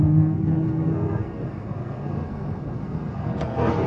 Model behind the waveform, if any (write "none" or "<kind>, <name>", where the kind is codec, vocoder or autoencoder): codec, SNAC